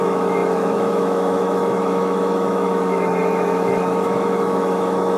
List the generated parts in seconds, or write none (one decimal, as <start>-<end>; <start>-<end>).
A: 0.0-5.2